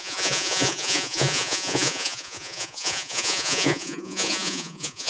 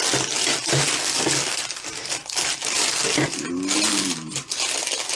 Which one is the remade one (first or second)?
first